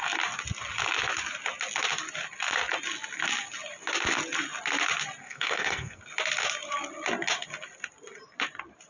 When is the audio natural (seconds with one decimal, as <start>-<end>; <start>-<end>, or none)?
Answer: 0.0-5.2; 6.0-8.9